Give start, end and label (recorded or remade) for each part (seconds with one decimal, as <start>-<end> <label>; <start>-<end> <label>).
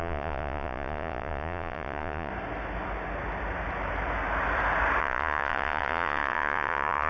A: 0.0-2.3 remade; 2.3-5.0 recorded; 5.0-7.1 remade